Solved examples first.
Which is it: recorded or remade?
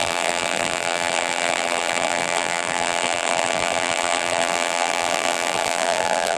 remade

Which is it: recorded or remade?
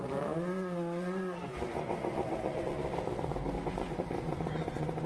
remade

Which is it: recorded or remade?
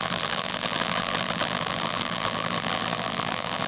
remade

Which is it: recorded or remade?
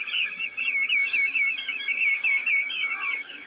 remade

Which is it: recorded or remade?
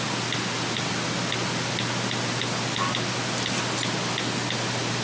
recorded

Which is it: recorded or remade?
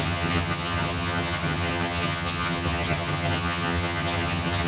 remade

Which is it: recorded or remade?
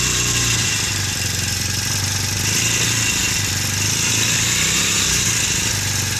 recorded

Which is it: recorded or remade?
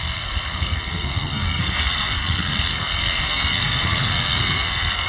remade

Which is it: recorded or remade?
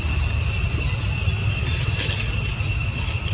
recorded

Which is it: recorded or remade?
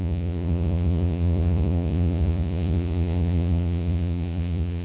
remade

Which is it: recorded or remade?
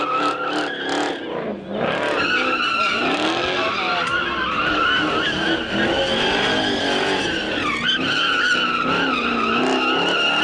recorded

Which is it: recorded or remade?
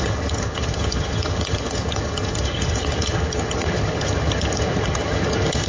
remade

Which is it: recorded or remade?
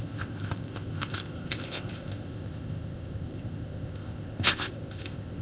remade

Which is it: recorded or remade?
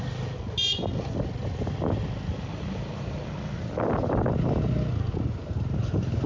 recorded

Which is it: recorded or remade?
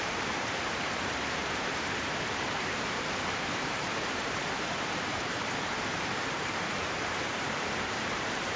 remade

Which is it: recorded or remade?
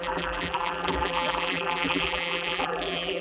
remade